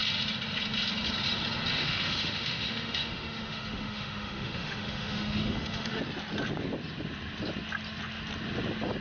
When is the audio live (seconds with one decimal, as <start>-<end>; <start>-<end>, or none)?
0.0-1.8; 6.0-9.0